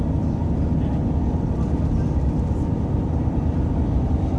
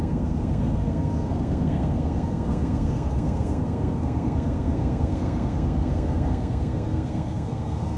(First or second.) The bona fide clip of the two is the first